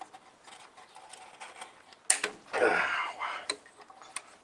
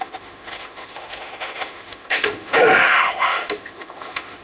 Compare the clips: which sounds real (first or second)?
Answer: first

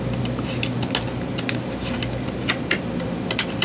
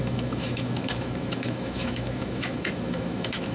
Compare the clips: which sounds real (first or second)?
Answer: first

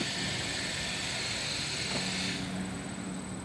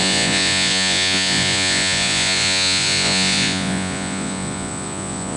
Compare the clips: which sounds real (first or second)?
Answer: first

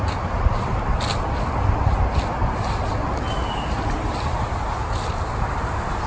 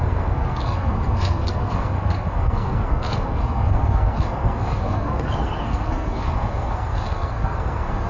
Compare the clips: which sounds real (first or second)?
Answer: first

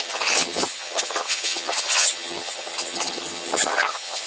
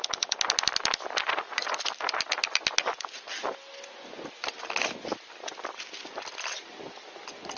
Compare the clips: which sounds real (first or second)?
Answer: second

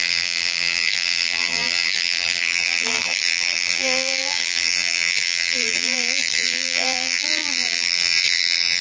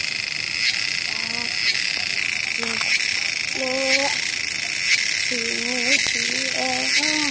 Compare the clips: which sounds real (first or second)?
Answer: second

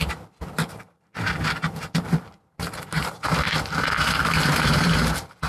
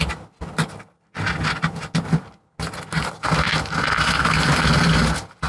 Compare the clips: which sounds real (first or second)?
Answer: second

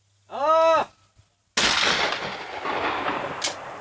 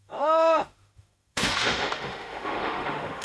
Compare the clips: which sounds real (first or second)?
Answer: first